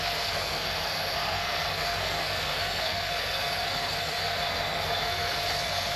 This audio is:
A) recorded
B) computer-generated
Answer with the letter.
B